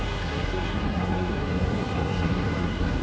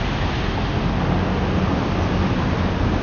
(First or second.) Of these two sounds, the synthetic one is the first